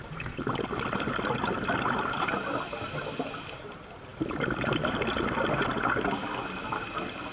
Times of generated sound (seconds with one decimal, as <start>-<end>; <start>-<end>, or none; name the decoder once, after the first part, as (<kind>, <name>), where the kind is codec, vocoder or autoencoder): none